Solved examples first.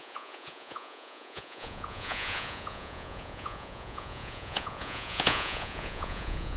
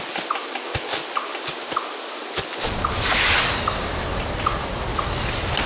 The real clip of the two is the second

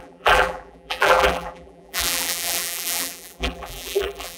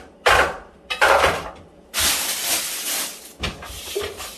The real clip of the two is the second